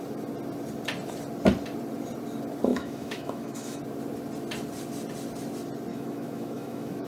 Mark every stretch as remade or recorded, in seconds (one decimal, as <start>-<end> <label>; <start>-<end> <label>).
0.0-2.7 recorded; 2.7-3.8 remade; 3.8-5.9 recorded; 5.9-7.1 remade